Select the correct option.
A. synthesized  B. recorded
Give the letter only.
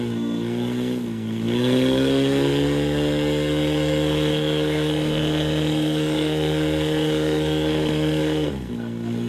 A